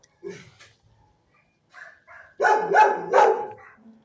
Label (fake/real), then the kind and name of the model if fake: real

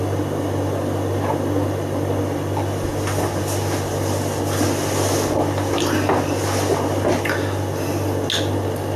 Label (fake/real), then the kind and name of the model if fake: real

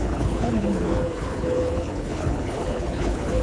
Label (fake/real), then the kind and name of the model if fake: fake, codec, HILCodec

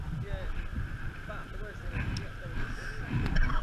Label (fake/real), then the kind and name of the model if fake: real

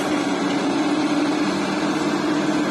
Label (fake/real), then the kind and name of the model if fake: real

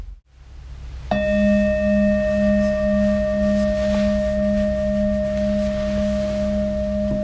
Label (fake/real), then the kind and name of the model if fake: real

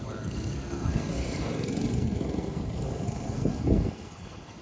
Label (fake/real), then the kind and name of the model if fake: fake, codec, SNAC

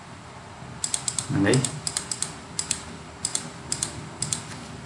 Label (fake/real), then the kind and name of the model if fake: real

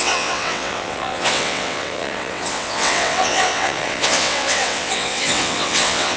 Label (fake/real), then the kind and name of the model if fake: fake, vocoder, WaveNeXt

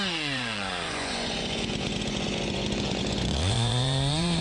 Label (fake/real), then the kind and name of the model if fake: fake, vocoder, Vocos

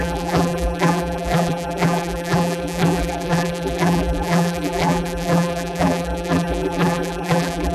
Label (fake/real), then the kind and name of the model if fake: fake, vocoder, BigVGAN v2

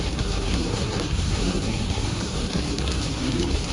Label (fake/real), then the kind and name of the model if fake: fake, codec, SNAC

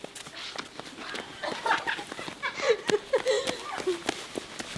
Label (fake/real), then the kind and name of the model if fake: real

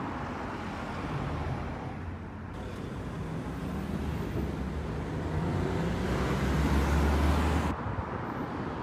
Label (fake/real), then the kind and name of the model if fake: real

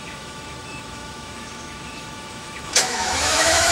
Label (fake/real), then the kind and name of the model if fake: fake, autoencoder, DAC-VAE